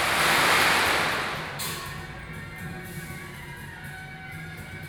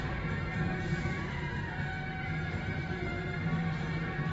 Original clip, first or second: first